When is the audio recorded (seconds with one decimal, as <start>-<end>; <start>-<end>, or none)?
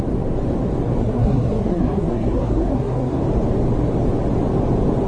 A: 0.0-1.0; 3.2-5.1